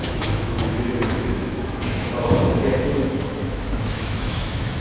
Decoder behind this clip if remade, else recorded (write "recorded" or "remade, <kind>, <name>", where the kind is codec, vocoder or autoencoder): remade, autoencoder, DAC-VAE